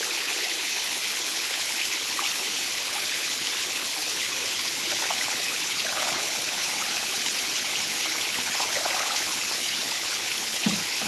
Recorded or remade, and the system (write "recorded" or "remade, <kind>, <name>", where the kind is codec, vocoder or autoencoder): remade, codec, HILCodec